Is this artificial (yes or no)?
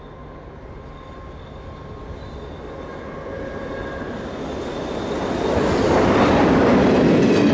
no